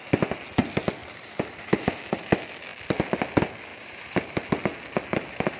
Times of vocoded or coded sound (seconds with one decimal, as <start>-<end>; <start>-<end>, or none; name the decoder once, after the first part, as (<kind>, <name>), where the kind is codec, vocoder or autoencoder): 1.0-2.0 (vocoder, BigVGAN v2); 3.7-4.4